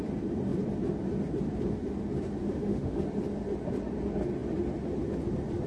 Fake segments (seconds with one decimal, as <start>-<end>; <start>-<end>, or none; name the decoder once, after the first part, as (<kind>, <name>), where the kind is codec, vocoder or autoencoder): 2.4-3.0 (autoencoder, DAC-VAE)